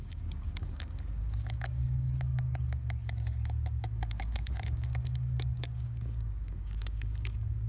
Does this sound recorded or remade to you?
remade